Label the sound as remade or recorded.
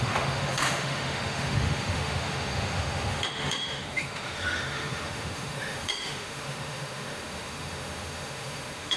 remade